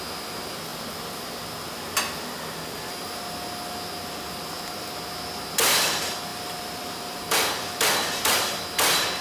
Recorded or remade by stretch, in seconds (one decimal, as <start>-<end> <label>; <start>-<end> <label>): 0.0-6.3 recorded; 6.3-7.2 remade; 7.2-9.2 recorded